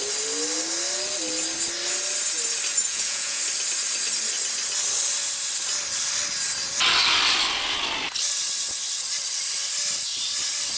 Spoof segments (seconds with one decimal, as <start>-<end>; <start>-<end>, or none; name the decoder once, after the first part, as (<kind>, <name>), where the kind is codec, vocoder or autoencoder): 2.7-3.4 (vocoder, Vocos)